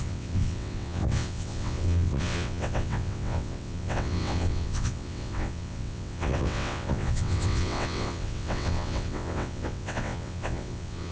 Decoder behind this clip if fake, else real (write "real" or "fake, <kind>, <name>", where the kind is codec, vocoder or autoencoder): fake, vocoder, WaveNeXt